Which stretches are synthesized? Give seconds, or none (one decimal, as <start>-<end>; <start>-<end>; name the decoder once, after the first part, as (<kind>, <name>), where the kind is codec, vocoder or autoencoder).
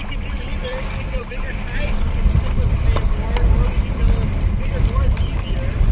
0.6-1.5 (vocoder, BigVGAN v2)